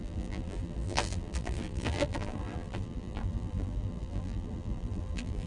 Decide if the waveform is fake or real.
fake